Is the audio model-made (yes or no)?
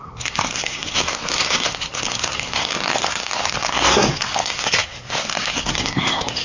yes